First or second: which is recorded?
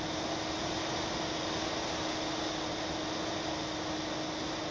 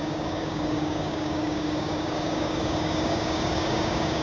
first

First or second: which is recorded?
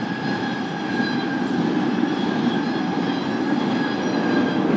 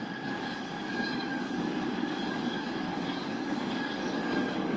first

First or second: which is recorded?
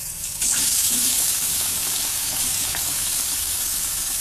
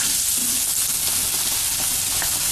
second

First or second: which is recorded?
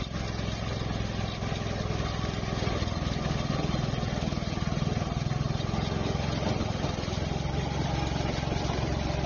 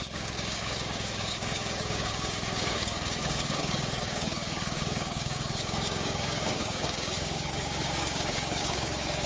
first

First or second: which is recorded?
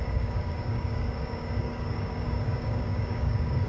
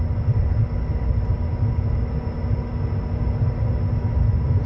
second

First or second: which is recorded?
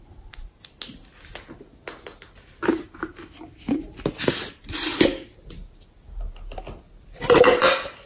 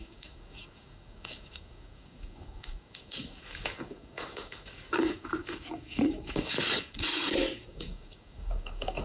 first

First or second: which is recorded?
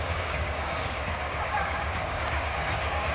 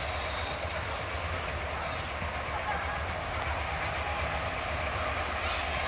second